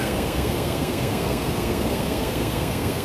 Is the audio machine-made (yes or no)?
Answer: yes